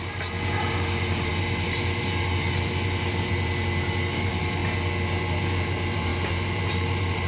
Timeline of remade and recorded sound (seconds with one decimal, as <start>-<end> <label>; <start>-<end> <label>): 0.0-4.6 remade; 4.6-5.4 recorded; 5.4-7.3 remade